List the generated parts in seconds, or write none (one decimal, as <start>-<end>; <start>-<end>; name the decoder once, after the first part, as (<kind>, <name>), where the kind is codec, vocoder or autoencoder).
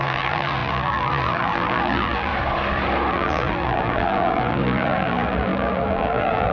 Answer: 0.0-2.3 (vocoder, BigVGAN v2); 3.1-6.5